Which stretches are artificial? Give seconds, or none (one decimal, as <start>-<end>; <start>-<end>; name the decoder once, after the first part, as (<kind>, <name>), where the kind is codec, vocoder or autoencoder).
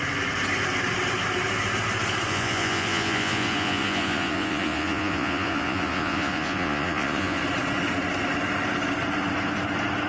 2.3-7.4 (vocoder, Vocos)